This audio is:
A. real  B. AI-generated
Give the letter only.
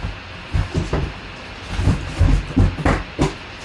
A